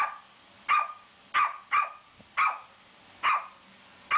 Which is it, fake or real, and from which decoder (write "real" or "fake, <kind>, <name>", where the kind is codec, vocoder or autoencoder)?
real